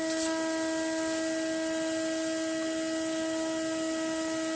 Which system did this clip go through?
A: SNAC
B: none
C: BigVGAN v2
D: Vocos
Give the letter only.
B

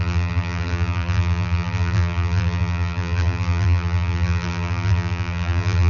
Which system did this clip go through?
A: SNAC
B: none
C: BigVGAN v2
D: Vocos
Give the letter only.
C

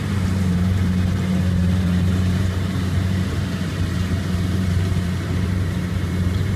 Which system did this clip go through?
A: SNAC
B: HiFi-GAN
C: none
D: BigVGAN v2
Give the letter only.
D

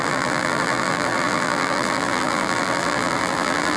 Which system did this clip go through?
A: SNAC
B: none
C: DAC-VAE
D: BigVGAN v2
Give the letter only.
D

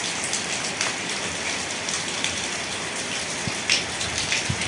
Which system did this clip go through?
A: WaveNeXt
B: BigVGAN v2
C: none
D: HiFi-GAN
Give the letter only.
B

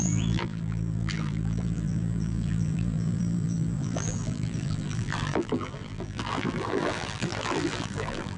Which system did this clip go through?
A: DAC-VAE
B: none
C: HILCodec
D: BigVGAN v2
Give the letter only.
D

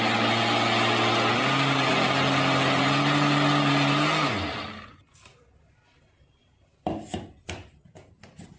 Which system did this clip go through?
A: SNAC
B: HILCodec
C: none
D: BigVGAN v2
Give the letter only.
C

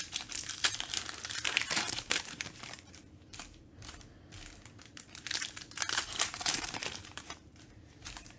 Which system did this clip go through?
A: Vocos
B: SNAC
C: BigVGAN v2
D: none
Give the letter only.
C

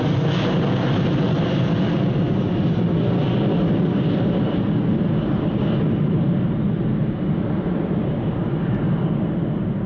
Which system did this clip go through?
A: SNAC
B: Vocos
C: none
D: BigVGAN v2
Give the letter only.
C